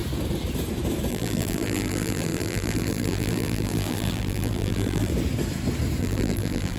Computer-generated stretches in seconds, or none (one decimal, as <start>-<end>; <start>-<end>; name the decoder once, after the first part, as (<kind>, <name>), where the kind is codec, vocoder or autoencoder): 1.1-5.1 (vocoder, BigVGAN v2); 6.0-6.8